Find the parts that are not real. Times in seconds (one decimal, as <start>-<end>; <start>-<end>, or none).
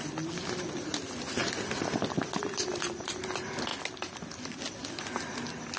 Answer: none